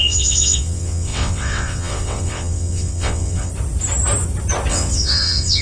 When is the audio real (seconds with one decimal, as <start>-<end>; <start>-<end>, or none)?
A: 3.5-4.7